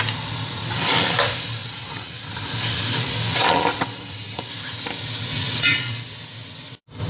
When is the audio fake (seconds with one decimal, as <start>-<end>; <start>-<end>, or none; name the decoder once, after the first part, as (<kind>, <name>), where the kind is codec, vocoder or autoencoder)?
1.6-2.3 (vocoder, WaveNeXt); 3.7-4.5; 5.3-6.0